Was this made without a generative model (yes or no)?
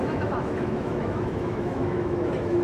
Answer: no